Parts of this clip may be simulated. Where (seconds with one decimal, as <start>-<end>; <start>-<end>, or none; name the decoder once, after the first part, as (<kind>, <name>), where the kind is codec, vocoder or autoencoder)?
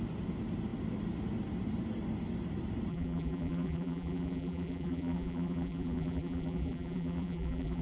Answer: 2.9-7.8 (vocoder, BigVGAN v2)